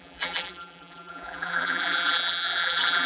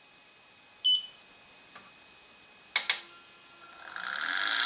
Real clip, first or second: second